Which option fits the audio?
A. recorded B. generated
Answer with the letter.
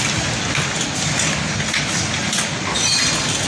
A